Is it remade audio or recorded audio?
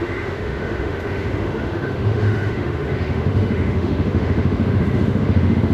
remade